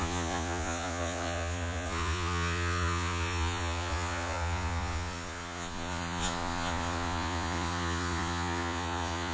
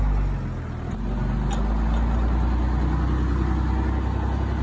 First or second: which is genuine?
second